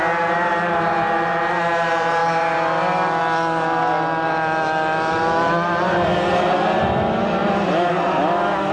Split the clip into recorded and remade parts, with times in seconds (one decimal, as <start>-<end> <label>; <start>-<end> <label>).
0.0-8.7 recorded